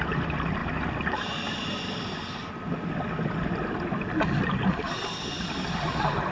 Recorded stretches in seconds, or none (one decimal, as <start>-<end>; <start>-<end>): 0.0-6.3